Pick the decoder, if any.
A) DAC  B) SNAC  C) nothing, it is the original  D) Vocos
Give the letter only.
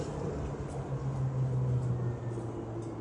C